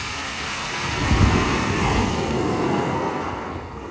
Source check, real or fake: fake